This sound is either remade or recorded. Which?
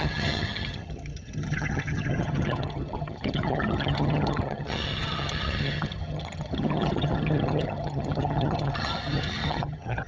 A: remade